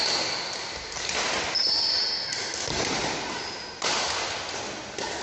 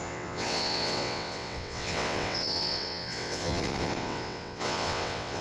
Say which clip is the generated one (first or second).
second